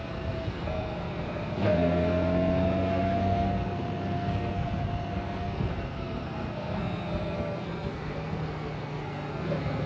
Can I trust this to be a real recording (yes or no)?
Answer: no